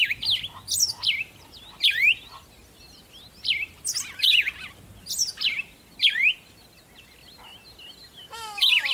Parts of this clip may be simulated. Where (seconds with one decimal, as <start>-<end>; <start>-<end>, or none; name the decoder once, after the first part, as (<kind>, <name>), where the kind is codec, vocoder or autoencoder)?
none